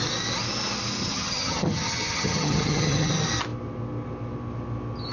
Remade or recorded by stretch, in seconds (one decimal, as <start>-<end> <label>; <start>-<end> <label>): 0.0-1.0 recorded; 1.0-3.1 remade; 3.1-5.1 recorded